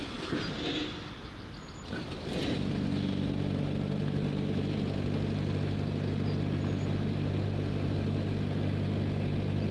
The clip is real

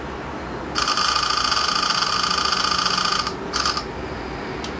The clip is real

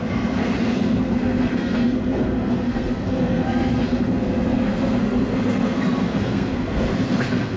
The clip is fake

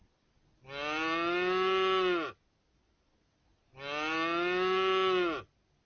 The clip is real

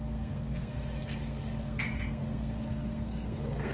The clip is fake